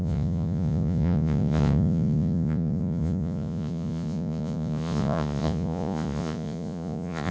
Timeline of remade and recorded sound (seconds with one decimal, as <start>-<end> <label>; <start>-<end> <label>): 0.0-7.3 remade